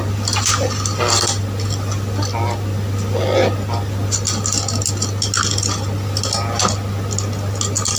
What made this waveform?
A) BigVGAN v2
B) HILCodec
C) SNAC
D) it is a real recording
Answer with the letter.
D